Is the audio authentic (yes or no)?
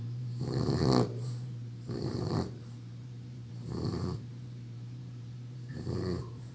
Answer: no